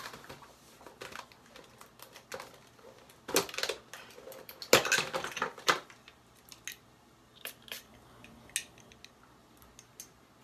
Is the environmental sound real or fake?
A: real